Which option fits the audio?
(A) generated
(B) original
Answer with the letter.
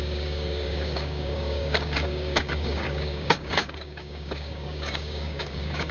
A